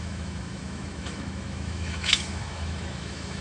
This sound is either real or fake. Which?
fake